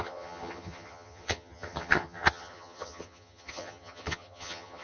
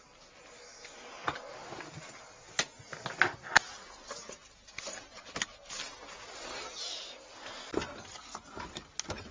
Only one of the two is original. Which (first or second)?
second